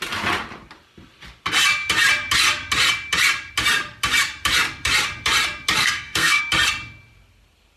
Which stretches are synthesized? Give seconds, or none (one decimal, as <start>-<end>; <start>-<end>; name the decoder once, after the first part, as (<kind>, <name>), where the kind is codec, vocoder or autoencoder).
5.8-6.4 (codec, SNAC)